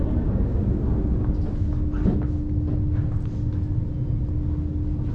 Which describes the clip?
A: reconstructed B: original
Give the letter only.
B